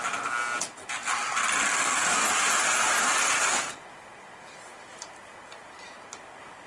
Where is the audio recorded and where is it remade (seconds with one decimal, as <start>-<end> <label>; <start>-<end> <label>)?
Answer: 0.0-6.7 recorded